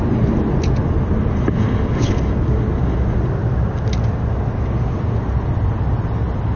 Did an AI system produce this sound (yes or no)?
no